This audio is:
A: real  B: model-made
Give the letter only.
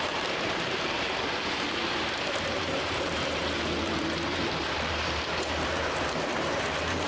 B